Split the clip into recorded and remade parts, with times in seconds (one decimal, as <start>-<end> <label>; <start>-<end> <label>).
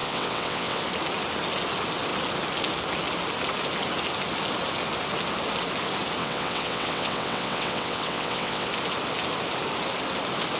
0.0-0.8 remade; 0.8-6.2 recorded; 6.2-8.7 remade; 8.7-10.6 recorded